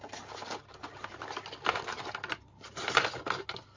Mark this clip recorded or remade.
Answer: recorded